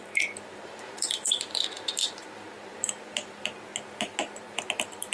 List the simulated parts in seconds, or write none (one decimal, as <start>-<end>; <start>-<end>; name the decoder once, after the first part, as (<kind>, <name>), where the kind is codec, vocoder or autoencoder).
0.0-3.7 (vocoder, BigVGAN v2); 4.4-5.1

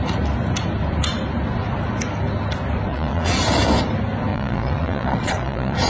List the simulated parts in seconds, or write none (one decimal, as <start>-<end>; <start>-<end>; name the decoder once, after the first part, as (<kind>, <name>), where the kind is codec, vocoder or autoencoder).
2.9-3.4 (vocoder, Vocos); 4.3-5.9

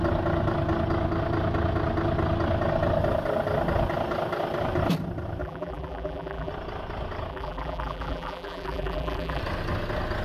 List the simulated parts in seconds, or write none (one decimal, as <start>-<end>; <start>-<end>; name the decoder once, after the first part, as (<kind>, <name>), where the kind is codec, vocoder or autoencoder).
5.4-6.5 (vocoder, BigVGAN v2); 7.3-9.4

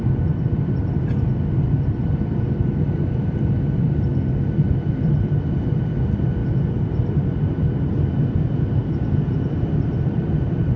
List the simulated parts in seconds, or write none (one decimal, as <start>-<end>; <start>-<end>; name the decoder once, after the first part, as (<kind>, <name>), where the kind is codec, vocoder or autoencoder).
none

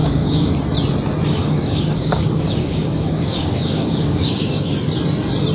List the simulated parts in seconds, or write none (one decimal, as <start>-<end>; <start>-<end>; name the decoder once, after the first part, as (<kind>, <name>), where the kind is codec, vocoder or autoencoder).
0.0-0.5 (codec, DAC); 1.4-4.7

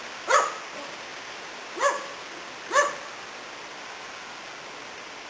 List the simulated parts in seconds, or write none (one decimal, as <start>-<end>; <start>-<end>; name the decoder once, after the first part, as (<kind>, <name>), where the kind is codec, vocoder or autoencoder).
none

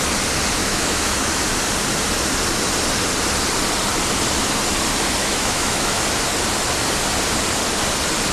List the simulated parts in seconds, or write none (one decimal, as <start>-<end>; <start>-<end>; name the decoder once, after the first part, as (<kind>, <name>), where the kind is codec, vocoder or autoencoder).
0.6-1.4 (autoencoder, DAC-VAE); 5.2-6.0